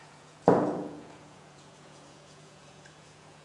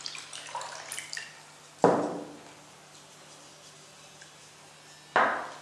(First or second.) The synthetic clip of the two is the first